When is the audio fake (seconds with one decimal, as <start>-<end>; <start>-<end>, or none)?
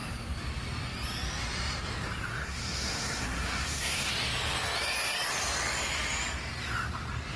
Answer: 2.3-4.1